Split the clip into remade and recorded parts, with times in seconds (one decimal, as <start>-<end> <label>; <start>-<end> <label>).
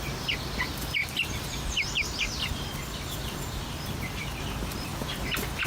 0.0-1.0 recorded; 1.0-4.4 remade; 4.4-4.9 recorded; 4.9-5.7 remade